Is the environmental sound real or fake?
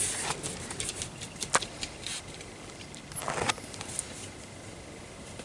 real